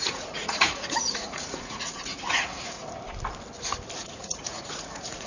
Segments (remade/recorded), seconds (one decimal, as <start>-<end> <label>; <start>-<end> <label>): 0.0-2.8 remade; 2.8-4.0 recorded; 4.0-5.3 remade